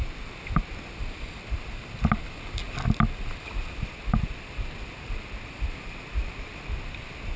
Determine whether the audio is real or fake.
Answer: real